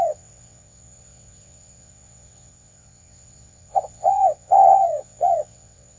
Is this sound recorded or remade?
remade